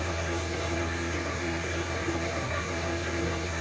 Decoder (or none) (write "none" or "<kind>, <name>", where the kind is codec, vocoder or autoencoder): codec, SNAC